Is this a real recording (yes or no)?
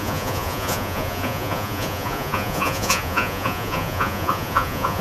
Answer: no